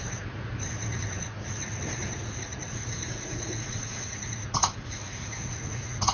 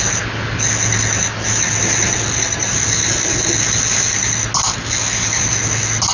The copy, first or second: first